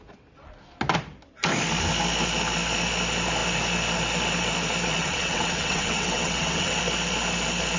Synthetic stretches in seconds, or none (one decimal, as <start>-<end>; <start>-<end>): 5.0-6.8